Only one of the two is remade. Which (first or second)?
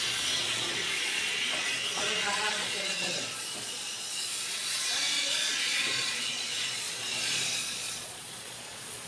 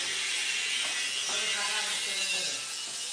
first